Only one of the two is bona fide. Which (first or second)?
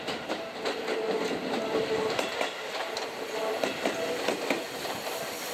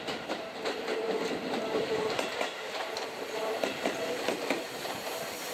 first